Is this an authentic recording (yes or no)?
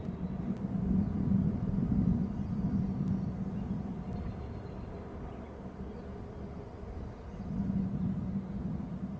yes